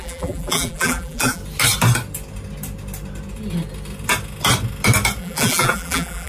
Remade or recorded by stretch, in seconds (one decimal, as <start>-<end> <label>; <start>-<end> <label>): 0.0-1.4 remade; 1.4-5.2 recorded; 5.2-6.3 remade